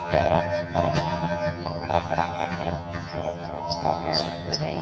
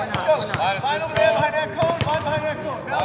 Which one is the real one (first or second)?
second